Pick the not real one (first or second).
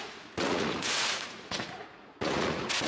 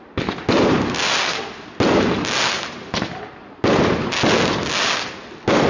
first